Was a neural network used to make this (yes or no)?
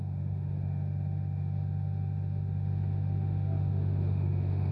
yes